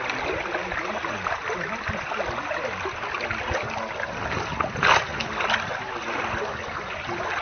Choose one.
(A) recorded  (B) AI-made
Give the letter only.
A